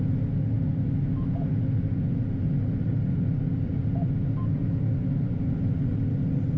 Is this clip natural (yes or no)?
yes